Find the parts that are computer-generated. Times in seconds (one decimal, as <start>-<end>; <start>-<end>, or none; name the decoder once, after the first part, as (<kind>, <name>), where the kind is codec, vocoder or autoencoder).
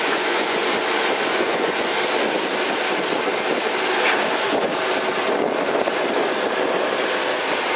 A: 0.0-0.7 (vocoder, Vocos); 1.3-1.9; 4.3-4.7